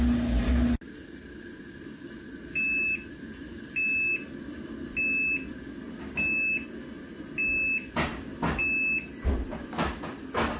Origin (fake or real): real